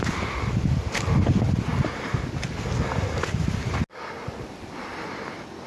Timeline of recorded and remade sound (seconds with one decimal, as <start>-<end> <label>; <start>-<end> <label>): 0.0-5.7 recorded